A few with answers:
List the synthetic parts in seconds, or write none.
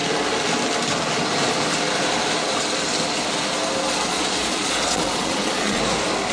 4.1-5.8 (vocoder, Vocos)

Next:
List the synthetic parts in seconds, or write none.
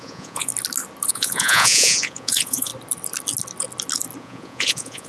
0.0-0.5 (vocoder, Vocos); 1.1-2.7; 4.2-5.1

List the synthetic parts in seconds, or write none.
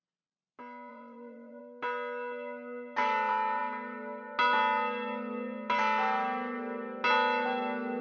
0.9-1.6 (vocoder, Vocos)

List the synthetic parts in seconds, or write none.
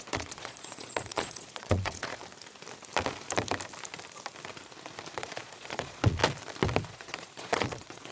0.0-2.2 (vocoder, Vocos); 5.1-6.2; 6.8-8.1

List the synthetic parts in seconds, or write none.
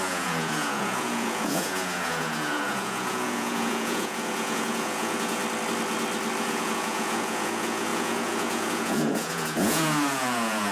0.0-5.4 (vocoder, Vocos); 6.4-10.7